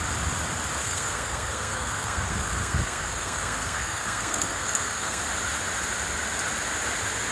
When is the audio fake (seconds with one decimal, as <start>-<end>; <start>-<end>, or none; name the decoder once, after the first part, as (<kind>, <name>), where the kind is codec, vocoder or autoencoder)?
0.8-5.2 (codec, SNAC)